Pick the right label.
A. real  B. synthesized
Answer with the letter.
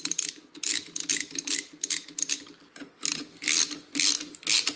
A